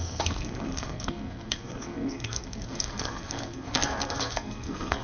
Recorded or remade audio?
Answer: remade